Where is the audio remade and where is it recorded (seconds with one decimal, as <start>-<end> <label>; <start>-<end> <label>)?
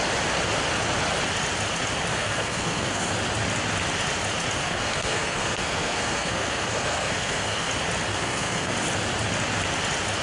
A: 0.0-2.1 recorded; 2.1-3.1 remade; 3.1-4.6 recorded; 4.6-7.7 remade; 7.7-8.1 recorded; 8.1-8.7 remade; 8.7-10.2 recorded